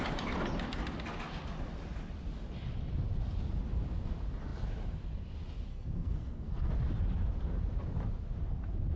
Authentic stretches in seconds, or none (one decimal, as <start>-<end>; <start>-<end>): 0.0-5.7; 6.7-9.0